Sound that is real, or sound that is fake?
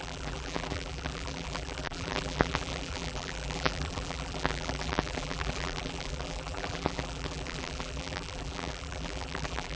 fake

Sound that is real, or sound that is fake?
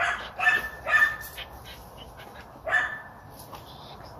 real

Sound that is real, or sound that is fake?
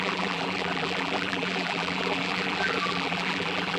fake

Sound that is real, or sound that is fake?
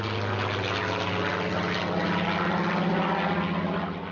real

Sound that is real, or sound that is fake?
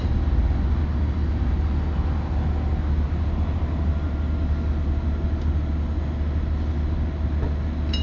real